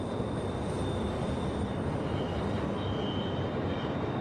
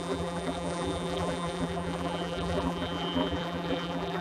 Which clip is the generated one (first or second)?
second